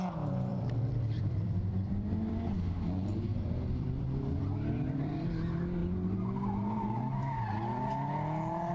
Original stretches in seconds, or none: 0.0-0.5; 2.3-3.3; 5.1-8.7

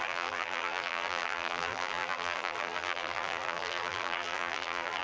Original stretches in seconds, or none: none